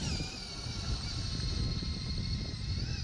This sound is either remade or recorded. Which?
recorded